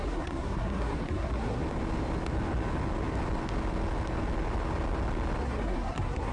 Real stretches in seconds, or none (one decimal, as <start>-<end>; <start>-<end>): 1.6-5.4